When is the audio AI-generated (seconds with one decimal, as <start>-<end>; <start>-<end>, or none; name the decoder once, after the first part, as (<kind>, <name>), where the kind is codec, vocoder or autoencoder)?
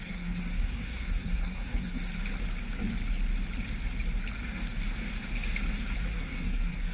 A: 0.0-2.1 (codec, SNAC); 6.2-6.9